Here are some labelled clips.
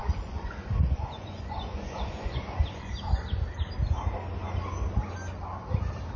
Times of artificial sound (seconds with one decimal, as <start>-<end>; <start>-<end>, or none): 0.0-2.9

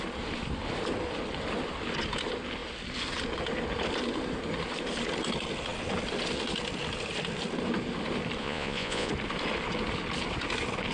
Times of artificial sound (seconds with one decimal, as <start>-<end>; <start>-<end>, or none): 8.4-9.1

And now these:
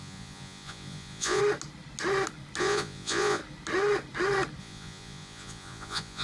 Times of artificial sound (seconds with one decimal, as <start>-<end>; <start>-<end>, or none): 0.0-1.4; 2.6-3.4; 4.6-6.2

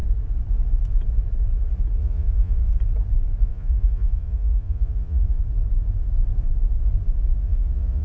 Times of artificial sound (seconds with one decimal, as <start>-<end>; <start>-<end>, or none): 2.0-2.7; 3.4-5.4; 7.4-8.0

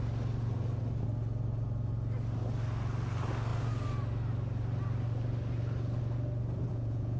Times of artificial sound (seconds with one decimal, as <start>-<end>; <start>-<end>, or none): 6.7-7.2

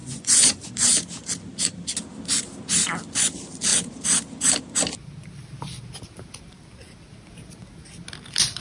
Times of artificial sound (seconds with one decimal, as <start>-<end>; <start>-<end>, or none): 0.0-0.7

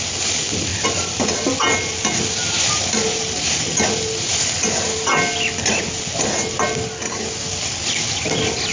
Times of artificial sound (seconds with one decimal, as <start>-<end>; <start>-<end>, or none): none